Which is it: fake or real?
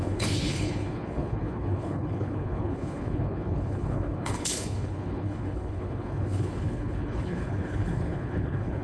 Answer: fake